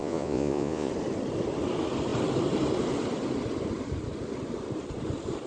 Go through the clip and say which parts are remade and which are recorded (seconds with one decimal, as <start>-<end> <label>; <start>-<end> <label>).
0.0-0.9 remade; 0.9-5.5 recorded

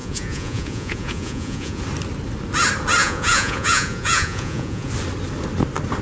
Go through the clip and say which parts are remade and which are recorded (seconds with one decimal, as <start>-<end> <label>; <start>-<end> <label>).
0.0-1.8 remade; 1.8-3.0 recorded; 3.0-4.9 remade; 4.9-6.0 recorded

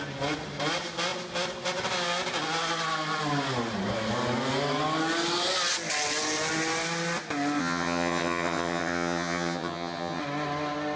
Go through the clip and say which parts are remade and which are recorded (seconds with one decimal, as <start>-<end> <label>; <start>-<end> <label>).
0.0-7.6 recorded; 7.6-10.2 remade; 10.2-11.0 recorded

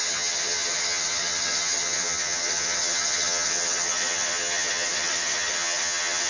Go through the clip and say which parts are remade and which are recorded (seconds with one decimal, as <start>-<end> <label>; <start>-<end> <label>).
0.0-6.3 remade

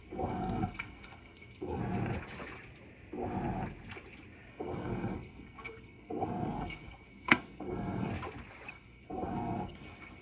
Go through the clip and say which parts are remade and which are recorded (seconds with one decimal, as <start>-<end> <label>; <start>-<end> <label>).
0.0-1.8 remade; 1.8-4.5 recorded; 4.5-8.1 remade; 8.1-8.7 recorded; 8.7-10.2 remade

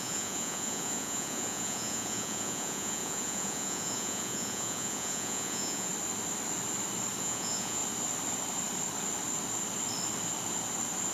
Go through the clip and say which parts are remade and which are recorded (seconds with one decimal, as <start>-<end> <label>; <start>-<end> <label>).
0.0-5.9 remade; 5.9-7.2 recorded; 7.2-7.8 remade; 7.8-11.1 recorded

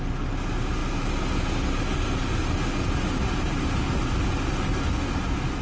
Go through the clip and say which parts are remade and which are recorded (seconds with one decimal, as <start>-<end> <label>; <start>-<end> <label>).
0.0-5.6 recorded